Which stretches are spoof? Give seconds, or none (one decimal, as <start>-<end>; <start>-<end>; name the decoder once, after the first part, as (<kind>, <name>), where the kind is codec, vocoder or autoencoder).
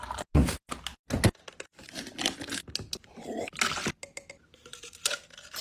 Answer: none